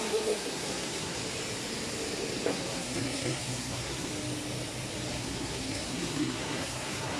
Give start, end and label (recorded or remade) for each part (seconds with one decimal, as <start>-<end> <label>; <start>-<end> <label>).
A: 0.0-1.2 remade; 1.2-2.5 recorded; 2.5-4.1 remade; 4.1-5.1 recorded; 5.1-7.2 remade